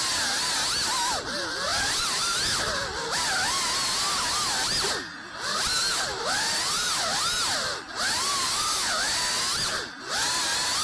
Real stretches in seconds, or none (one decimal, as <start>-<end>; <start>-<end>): 0.0-10.8